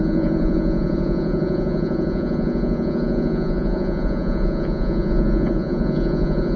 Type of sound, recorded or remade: remade